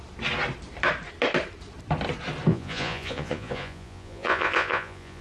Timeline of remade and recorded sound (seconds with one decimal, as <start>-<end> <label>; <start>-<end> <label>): 0.0-2.5 recorded; 2.5-5.2 remade